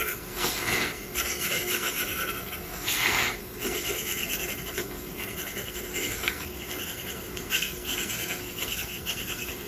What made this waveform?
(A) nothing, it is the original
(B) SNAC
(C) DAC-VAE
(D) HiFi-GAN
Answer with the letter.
B